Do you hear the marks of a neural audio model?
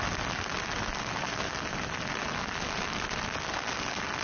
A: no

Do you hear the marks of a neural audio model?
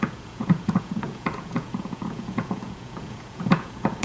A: yes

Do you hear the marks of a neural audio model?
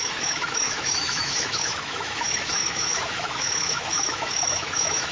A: yes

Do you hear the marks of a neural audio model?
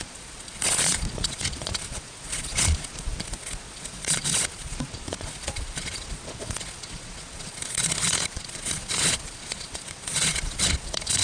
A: yes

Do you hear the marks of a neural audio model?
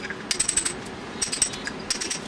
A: no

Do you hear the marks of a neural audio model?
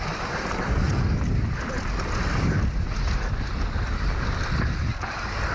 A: no